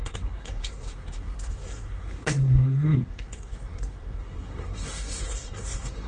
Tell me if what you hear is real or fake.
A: fake